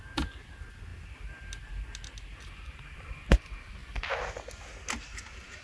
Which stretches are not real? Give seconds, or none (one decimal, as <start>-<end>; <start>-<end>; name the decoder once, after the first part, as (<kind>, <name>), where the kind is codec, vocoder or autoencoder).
none